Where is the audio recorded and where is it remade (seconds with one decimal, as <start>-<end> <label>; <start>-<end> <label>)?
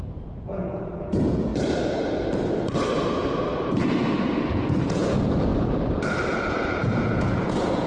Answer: 0.0-1.5 remade; 1.5-3.6 recorded; 3.6-5.5 remade; 5.5-6.3 recorded; 6.3-7.9 remade